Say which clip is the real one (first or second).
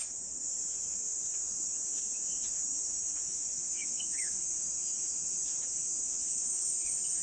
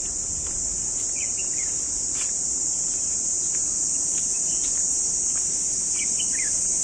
second